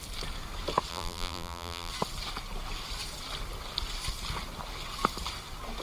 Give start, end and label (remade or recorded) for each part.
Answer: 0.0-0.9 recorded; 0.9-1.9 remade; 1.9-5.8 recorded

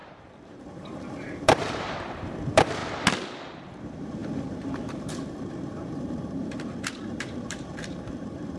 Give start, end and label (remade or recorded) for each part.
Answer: 0.0-2.8 remade; 2.8-3.8 recorded; 3.8-8.6 remade